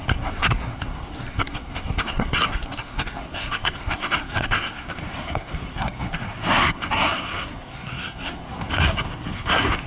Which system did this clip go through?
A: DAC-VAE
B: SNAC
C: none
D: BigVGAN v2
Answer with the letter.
B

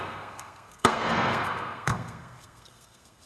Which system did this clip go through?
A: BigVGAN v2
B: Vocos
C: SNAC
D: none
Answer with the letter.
C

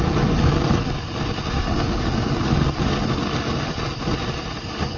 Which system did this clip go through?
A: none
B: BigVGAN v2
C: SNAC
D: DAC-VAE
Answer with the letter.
A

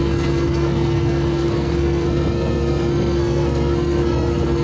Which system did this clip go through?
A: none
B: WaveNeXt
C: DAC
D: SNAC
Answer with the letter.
D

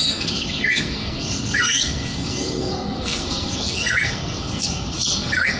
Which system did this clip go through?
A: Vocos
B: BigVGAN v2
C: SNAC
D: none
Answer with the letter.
C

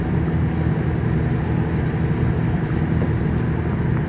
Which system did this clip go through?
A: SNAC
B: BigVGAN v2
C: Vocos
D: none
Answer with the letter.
D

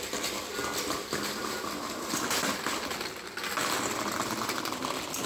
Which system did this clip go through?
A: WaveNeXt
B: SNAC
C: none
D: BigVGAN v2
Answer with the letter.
C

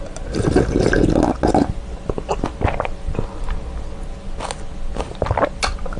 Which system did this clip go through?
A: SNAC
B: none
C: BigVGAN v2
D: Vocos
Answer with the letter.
B